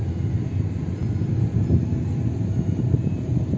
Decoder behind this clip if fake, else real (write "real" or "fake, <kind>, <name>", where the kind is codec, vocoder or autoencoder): real